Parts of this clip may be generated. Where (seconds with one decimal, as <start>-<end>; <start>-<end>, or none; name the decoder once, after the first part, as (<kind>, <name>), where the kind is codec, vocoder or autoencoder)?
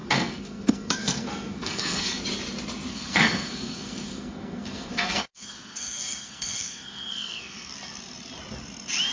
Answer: 0.0-2.2 (codec, SNAC); 2.9-7.7